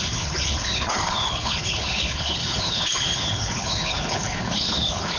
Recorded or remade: remade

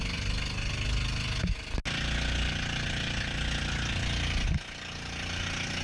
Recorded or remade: recorded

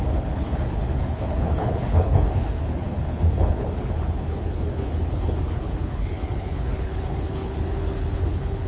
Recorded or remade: remade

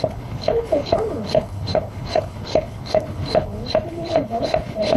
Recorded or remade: remade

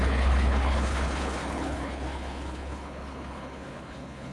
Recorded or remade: remade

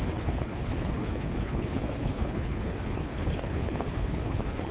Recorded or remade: remade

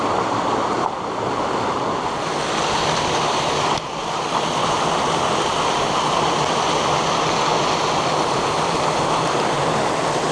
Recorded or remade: recorded